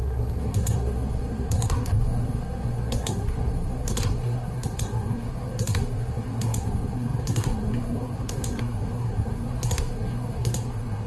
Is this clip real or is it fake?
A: fake